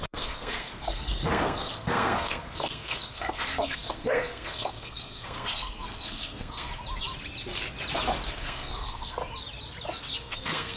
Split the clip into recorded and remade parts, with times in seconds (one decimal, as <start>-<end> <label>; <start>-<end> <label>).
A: 0.0-6.7 remade; 6.7-8.3 recorded; 8.3-9.2 remade; 9.2-10.2 recorded; 10.2-10.8 remade